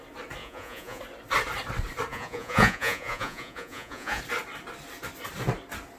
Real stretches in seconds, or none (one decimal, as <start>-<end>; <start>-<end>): 0.0-0.4; 1.0-2.1; 4.2-6.0